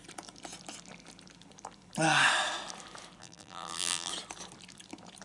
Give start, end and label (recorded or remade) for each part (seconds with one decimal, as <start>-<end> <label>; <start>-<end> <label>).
0.0-3.2 recorded; 3.2-4.1 remade; 4.1-5.2 recorded